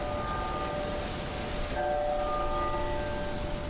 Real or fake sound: real